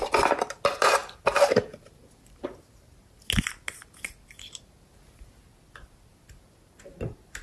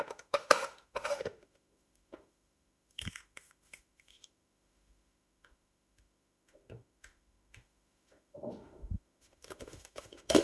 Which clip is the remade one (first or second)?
second